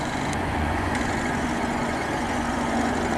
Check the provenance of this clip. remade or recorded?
remade